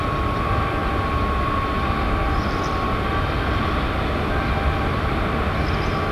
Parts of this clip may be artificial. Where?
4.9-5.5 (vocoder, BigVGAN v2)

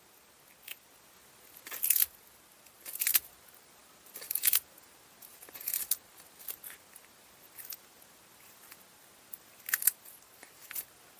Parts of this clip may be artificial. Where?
none

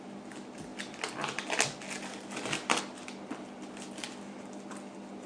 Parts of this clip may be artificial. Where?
none